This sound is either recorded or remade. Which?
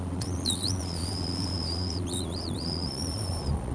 remade